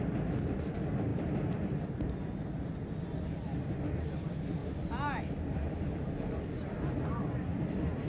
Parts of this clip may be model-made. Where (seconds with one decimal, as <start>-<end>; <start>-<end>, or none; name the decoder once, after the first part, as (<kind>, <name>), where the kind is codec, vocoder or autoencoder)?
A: none